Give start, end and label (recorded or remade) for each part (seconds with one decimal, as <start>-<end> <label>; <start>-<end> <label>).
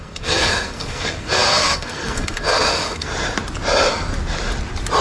0.0-3.1 remade; 3.1-5.0 recorded